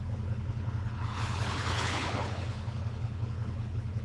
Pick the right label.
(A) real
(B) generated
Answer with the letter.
B